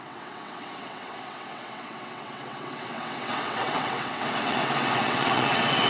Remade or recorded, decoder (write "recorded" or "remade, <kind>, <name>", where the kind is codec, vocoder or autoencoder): remade, vocoder, WaveNeXt